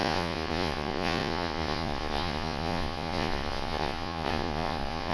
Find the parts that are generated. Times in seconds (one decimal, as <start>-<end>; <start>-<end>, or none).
0.0-5.1